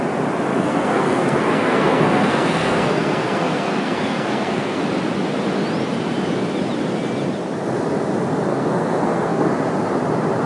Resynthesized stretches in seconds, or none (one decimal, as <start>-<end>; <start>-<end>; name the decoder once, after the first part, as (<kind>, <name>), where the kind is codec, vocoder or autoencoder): 0.5-4.8 (codec, SNAC); 8.5-9.4